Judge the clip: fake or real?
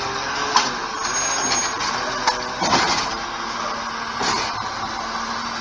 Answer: real